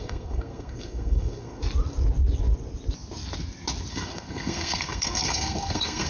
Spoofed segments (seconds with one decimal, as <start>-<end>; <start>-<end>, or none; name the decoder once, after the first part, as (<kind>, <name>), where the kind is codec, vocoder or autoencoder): 0.0-1.6 (codec, SNAC); 3.9-6.1